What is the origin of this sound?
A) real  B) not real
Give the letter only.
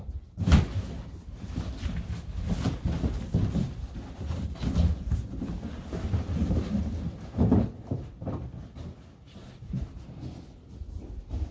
A